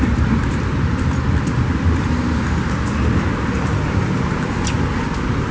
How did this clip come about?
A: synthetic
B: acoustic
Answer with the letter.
A